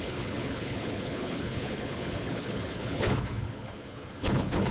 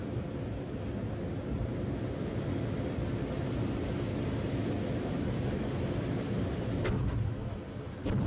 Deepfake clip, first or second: first